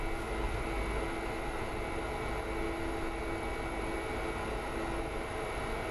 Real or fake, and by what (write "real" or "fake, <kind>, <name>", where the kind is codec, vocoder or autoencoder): real